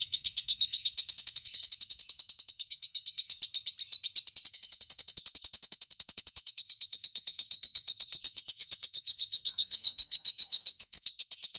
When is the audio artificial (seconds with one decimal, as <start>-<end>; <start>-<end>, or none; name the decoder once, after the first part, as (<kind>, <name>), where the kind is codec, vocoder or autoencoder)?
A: 0.0-3.4 (codec, SNAC); 4.5-11.6